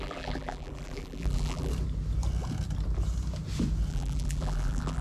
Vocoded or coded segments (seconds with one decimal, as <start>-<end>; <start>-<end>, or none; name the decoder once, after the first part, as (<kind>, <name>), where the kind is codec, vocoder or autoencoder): 0.0-1.7 (vocoder, BigVGAN v2); 3.9-5.0

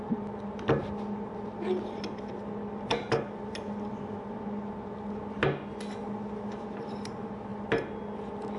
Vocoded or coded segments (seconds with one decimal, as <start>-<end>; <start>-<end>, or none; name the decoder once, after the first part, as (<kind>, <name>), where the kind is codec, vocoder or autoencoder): none

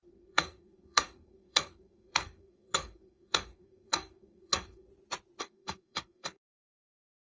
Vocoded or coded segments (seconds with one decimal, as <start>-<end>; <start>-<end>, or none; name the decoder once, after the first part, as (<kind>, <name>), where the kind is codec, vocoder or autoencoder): 0.0-4.9 (codec, SNAC); 5.4-7.2

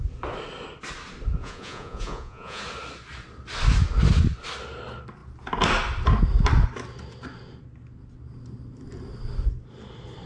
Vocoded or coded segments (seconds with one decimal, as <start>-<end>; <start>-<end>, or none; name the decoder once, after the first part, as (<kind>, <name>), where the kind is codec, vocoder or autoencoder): 1.4-2.6 (vocoder, Vocos)